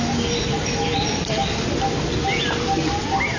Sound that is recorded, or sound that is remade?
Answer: recorded